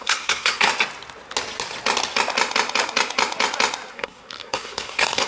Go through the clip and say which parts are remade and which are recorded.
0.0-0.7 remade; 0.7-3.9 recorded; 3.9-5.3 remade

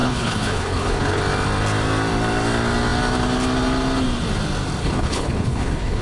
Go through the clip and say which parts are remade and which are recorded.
0.0-1.2 remade; 1.2-4.8 recorded; 4.8-6.0 remade

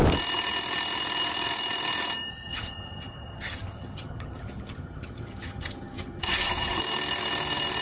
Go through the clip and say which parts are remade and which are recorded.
0.0-2.3 recorded; 2.3-6.8 remade; 6.8-7.8 recorded

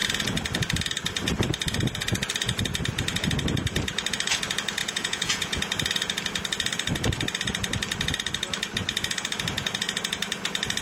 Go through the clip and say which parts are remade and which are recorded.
0.0-4.8 recorded; 4.8-5.6 remade; 5.6-10.8 recorded